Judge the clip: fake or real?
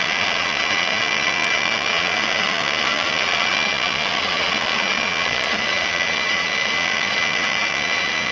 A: fake